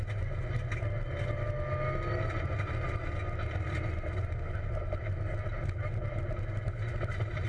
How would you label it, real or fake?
real